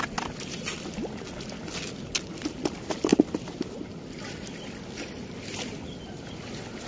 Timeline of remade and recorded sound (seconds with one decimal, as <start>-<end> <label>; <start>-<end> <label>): 0.0-6.9 recorded